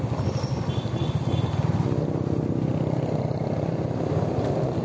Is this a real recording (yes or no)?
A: yes